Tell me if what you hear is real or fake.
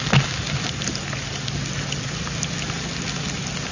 real